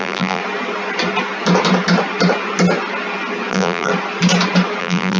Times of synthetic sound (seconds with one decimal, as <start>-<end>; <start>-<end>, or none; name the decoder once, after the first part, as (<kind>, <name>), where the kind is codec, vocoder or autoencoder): 0.0-0.4 (vocoder, BigVGAN v2); 3.5-3.9; 4.8-5.2